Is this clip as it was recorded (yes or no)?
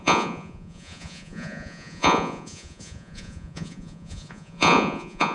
no